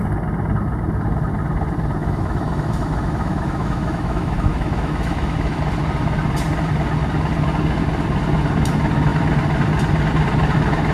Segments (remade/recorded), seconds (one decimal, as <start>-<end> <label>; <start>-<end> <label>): 0.0-2.0 recorded; 2.0-5.6 remade; 5.6-10.9 recorded